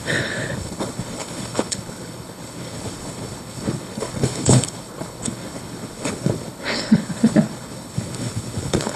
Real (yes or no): no